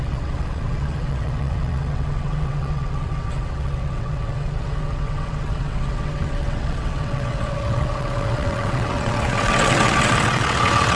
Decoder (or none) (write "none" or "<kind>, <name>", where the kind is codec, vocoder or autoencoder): vocoder, WaveNeXt